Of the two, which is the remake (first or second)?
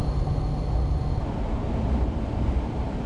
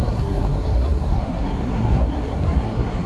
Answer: second